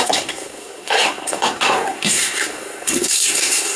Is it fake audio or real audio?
fake